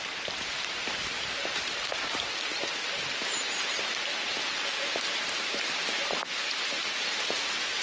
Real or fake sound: fake